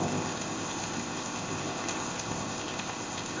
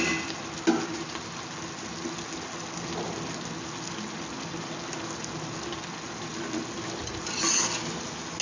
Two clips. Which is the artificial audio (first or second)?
first